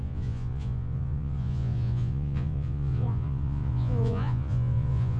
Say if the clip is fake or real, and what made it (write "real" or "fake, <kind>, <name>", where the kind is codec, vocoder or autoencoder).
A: fake, vocoder, Vocos